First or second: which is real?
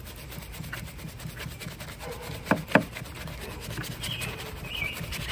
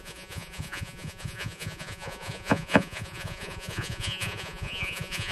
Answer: first